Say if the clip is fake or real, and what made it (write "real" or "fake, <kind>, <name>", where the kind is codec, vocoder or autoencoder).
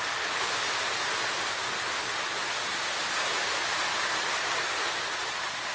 real